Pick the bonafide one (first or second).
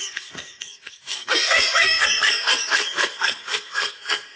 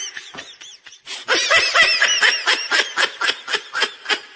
second